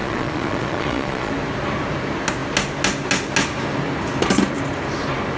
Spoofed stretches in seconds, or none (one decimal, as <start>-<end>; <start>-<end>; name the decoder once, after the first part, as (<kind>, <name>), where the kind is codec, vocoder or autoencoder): 0.0-1.3 (vocoder, Vocos)